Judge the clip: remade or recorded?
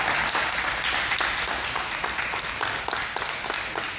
recorded